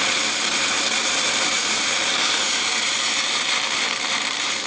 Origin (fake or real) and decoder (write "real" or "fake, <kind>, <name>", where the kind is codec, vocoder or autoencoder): fake, vocoder, BigVGAN v2